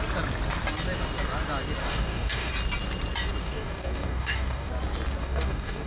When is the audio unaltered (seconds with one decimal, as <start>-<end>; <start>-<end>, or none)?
0.0-1.8; 2.5-3.4; 4.7-5.2